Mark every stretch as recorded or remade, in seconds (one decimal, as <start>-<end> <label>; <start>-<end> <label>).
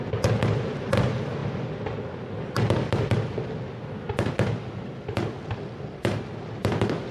0.0-7.1 recorded